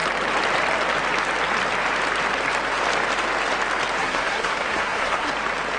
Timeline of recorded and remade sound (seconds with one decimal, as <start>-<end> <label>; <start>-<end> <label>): 0.0-4.0 recorded; 4.0-5.3 remade; 5.3-5.8 recorded